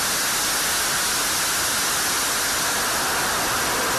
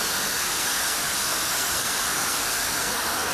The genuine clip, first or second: first